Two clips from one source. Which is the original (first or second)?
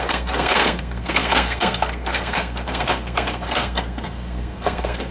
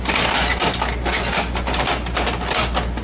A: second